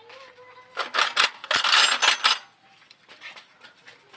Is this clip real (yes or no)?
yes